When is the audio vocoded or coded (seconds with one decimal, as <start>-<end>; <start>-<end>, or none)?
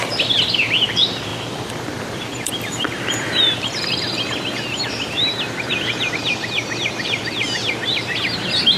1.3-6.1